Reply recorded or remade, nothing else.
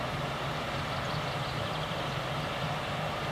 recorded